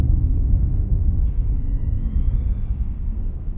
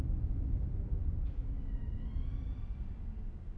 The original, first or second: second